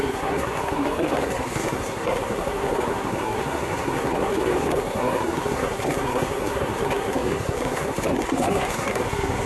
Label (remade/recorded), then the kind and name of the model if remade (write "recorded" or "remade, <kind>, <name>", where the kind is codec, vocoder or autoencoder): remade, codec, SNAC